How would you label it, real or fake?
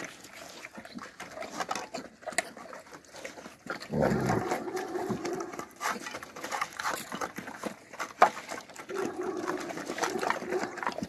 real